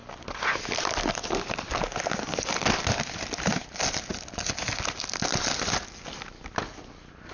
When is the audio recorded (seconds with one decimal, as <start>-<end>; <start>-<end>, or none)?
0.0-7.3